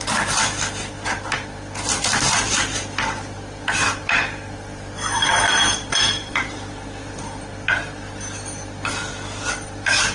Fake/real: real